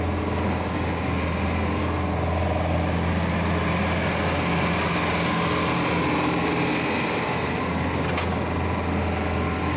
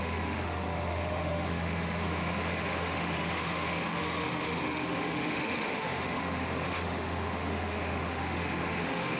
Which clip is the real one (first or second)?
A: first